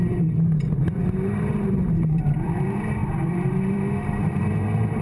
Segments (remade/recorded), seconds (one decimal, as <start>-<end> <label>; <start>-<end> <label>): 0.0-1.0 remade; 1.0-1.6 recorded; 1.6-5.0 remade